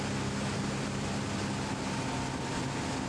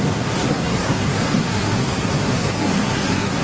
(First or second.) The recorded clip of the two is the first